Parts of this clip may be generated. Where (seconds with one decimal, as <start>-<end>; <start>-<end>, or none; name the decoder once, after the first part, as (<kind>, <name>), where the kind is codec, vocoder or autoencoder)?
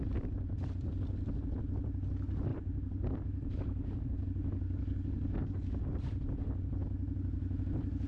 2.5-5.8 (codec, DAC)